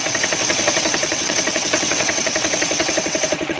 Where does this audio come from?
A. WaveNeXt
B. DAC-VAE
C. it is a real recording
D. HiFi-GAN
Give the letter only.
A